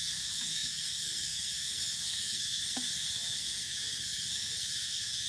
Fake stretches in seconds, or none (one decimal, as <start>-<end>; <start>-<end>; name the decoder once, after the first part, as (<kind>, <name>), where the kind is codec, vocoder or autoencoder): 0.0-5.3 (codec, SNAC)